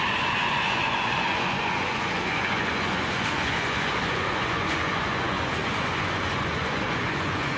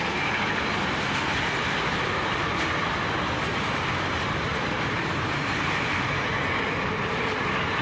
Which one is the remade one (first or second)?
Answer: first